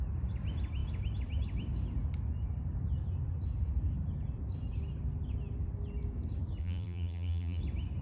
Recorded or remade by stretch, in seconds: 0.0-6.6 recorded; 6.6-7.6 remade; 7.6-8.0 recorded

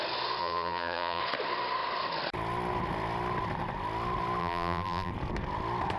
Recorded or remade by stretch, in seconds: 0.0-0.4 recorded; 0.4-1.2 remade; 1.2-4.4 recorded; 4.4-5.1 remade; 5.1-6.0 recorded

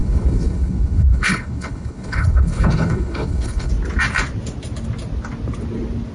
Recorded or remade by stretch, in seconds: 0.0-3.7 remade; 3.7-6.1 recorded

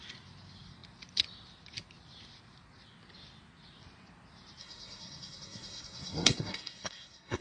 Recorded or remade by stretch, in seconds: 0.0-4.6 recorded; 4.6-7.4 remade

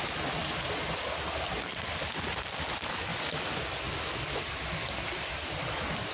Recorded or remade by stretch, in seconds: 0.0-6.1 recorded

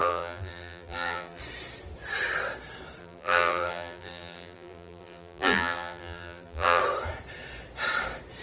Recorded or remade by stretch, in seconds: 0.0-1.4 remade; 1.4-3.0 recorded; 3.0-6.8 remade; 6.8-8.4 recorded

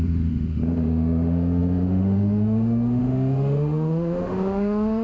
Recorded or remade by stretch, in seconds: 0.0-5.0 remade